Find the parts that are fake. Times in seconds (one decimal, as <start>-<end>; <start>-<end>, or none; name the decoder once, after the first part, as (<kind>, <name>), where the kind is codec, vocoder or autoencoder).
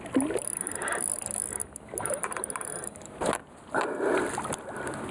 none